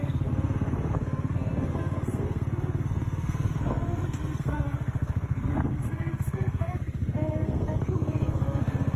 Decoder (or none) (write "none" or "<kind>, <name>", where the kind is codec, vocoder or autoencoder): codec, SNAC